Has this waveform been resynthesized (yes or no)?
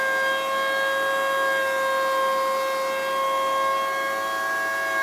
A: no